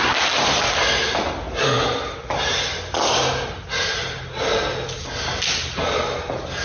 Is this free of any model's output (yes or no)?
yes